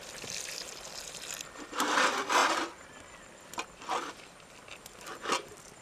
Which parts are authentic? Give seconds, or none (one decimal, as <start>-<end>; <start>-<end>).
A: none